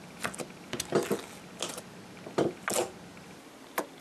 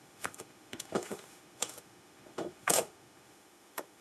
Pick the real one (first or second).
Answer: first